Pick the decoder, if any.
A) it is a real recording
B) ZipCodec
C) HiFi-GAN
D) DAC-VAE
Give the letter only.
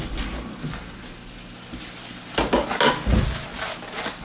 A